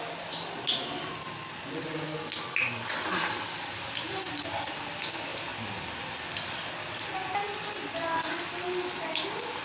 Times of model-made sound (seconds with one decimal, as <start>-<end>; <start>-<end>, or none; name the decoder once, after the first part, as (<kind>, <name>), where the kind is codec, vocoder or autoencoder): none

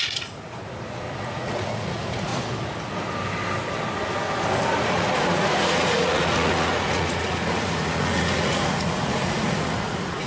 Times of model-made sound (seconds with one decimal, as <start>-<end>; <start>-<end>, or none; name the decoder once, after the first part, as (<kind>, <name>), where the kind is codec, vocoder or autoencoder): 0.0-0.6 (vocoder, Vocos); 1.2-2.3; 4.8-10.3

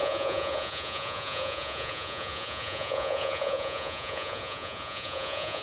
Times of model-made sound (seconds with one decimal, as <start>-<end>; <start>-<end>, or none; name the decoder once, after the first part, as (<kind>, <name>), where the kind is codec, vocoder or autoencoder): 0.0-5.6 (vocoder, Vocos)

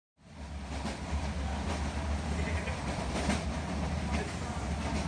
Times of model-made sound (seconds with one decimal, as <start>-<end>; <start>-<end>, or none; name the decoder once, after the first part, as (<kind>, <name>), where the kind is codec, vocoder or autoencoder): none

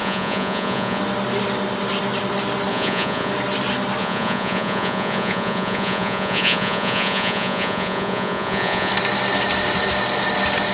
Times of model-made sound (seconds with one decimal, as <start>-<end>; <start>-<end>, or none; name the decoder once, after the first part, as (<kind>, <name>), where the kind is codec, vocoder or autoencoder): 0.0-1.0 (vocoder, Vocos); 2.7-3.3; 4.0-8.9

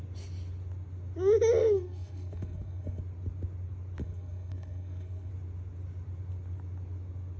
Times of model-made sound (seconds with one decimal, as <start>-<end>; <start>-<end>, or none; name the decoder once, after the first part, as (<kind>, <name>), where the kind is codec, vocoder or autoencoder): 1.6-3.0 (codec, SNAC); 4.0-5.3